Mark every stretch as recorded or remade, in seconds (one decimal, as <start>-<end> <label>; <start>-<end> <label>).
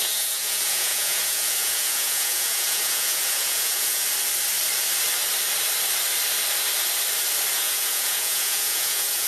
0.0-4.0 remade; 4.0-7.5 recorded; 7.5-9.3 remade